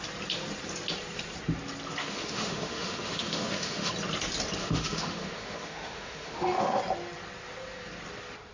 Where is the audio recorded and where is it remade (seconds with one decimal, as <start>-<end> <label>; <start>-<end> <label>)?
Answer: 0.0-2.0 recorded; 2.0-3.9 remade; 3.9-4.6 recorded; 4.6-6.8 remade; 6.8-8.5 recorded